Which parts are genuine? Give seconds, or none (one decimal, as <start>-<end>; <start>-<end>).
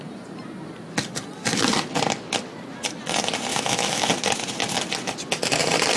0.0-3.5; 4.1-6.0